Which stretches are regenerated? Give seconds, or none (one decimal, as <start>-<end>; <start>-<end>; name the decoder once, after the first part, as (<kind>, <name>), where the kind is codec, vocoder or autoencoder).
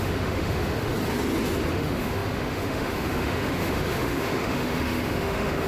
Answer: 0.0-0.9 (autoencoder, DAC-VAE); 1.7-5.7